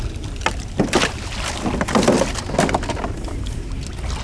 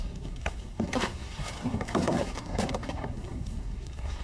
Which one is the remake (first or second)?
second